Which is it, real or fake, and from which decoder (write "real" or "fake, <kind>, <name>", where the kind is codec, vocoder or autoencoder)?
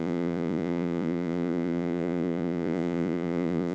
fake, vocoder, Vocos